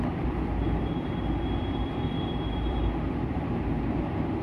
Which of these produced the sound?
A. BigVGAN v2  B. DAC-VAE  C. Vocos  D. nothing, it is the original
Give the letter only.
A